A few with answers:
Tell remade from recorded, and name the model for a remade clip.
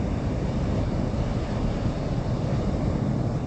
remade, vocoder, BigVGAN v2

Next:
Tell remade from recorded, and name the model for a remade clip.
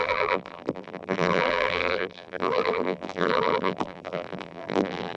remade, vocoder, BigVGAN v2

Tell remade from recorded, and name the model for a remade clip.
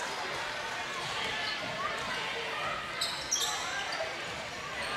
recorded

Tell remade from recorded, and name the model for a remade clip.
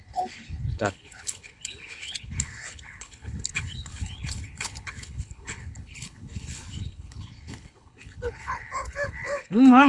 remade, codec, HILCodec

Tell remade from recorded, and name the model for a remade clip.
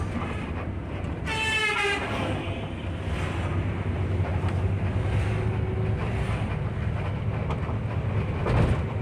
recorded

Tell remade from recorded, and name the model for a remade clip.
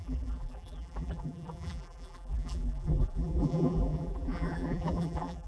remade, vocoder, BigVGAN v2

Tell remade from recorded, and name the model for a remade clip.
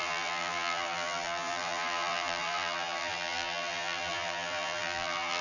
remade, vocoder, BigVGAN v2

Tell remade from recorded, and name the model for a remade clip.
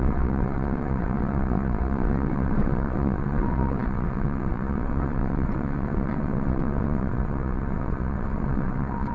remade, vocoder, WaveNeXt